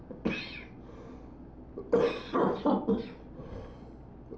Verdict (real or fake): real